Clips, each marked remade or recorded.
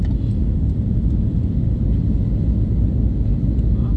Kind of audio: recorded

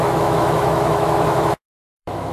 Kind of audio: remade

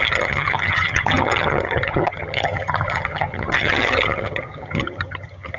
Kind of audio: remade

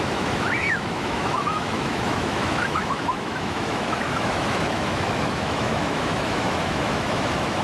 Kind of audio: remade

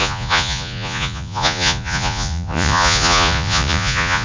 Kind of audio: remade